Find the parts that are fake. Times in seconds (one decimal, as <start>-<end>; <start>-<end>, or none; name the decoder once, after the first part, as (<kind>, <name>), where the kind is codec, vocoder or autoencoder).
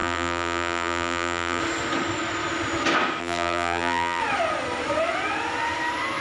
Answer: 0.0-1.6 (vocoder, BigVGAN v2); 3.2-4.2